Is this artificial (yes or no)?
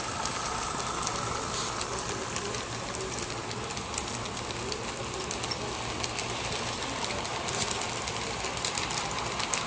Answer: no